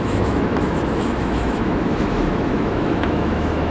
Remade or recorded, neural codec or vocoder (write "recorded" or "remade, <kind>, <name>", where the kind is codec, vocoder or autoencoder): remade, autoencoder, DAC-VAE